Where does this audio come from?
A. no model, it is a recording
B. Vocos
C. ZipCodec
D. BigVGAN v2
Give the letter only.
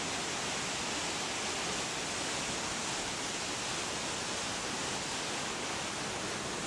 A